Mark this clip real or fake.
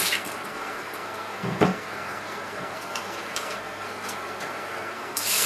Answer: fake